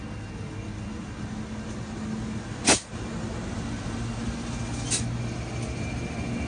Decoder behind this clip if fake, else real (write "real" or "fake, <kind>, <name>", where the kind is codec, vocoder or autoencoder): real